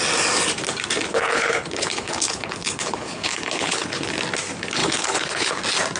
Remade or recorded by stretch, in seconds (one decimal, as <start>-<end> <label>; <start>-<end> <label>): 0.0-1.1 recorded; 1.1-4.1 remade; 4.1-4.8 recorded; 4.8-5.6 remade; 5.6-6.0 recorded